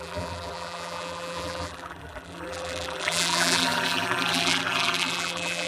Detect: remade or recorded remade